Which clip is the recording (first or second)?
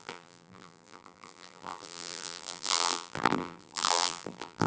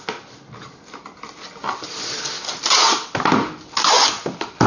second